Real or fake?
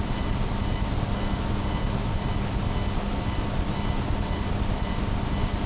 real